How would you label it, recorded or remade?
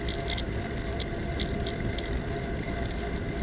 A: recorded